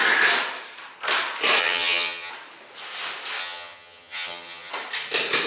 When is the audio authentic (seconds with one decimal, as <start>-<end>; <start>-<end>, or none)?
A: 0.0-1.6; 2.3-3.4; 4.7-5.5